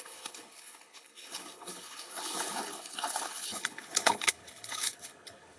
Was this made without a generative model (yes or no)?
no